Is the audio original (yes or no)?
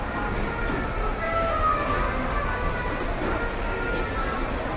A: yes